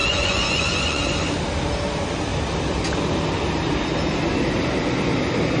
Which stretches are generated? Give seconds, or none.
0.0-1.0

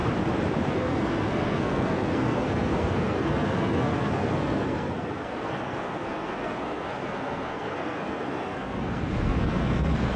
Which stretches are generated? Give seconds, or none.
0.7-10.2

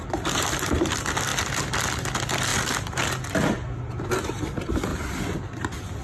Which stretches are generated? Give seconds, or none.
0.0-1.3; 2.0-2.5; 4.1-4.9; 5.6-6.0

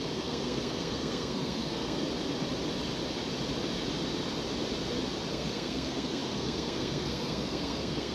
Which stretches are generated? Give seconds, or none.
0.0-2.0; 5.3-8.1

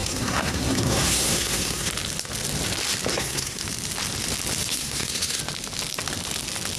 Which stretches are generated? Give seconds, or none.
0.0-1.9; 3.1-3.6; 4.7-5.4

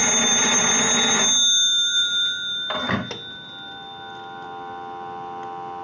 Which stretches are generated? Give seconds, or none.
none

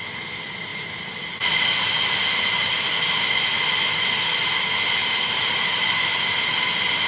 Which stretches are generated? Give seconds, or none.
0.7-1.6; 5.0-5.8

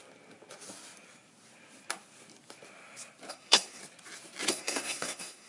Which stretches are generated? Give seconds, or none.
3.3-3.8; 4.5-5.5